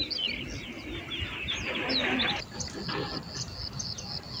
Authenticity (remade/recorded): recorded